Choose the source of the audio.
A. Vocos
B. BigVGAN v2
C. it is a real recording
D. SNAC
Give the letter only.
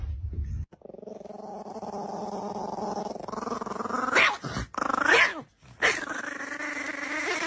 C